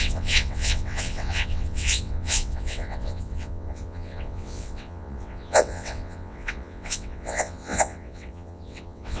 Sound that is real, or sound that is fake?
fake